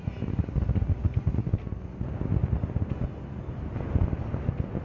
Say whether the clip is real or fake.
real